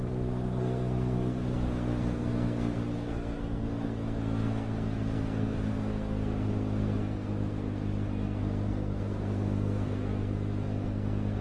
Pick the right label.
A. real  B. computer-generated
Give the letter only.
B